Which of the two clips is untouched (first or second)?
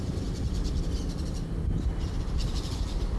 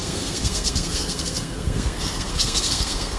first